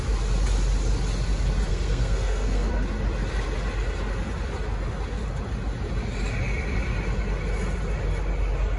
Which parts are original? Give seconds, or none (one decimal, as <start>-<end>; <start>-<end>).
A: 0.0-1.7; 2.7-8.8